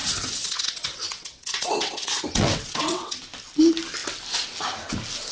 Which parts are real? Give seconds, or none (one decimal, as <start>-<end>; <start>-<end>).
3.2-5.3